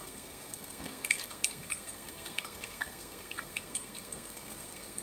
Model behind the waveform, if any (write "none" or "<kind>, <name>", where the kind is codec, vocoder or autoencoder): codec, SNAC